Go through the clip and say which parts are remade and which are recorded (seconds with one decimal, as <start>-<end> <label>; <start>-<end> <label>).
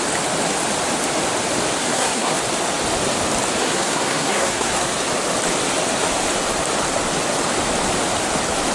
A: 0.0-1.8 recorded; 1.8-2.4 remade; 2.4-3.6 recorded; 3.6-4.9 remade; 4.9-8.7 recorded